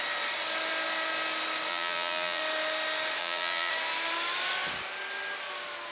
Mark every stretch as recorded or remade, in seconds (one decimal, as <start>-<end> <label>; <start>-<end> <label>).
0.0-1.7 recorded; 1.7-2.4 remade; 2.4-3.2 recorded; 3.2-3.7 remade; 3.7-5.9 recorded